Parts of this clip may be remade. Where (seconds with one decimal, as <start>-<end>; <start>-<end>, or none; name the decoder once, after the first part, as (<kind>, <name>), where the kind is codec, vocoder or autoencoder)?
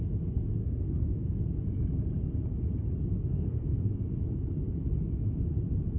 0.6-1.4 (codec, SNAC); 3.3-3.9